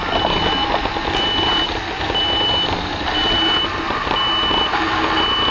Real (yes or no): yes